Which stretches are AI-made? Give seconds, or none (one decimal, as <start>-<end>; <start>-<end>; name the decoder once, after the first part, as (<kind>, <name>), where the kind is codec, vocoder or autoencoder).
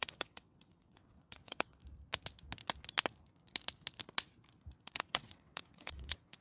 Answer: 0.0-1.8 (vocoder, WaveNeXt); 4.8-6.4